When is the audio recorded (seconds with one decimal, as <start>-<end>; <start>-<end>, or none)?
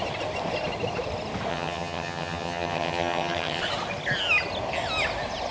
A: 0.0-1.5; 3.6-5.5